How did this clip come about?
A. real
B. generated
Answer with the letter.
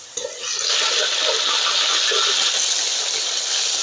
A